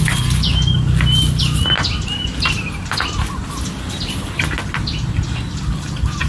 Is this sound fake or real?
real